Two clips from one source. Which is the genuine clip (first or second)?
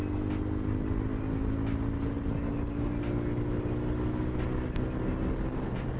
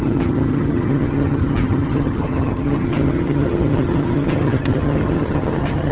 first